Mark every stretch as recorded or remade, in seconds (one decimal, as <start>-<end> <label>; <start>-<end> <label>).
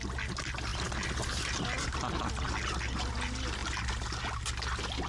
0.0-5.1 recorded